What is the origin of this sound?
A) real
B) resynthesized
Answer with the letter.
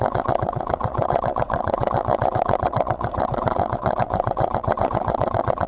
B